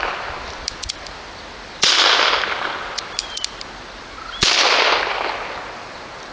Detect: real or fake real